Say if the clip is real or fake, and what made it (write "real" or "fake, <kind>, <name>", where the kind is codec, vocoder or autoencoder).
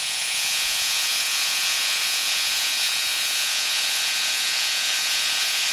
fake, vocoder, Vocos